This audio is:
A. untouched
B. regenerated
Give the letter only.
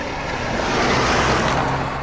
A